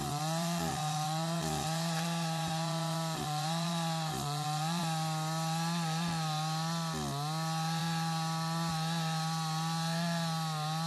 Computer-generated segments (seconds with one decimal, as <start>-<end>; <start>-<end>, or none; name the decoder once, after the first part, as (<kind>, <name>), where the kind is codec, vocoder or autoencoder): 0.0-4.8 (vocoder, Vocos)